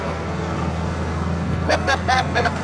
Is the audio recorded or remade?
remade